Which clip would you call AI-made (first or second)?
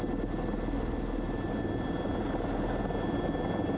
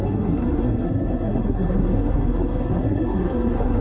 second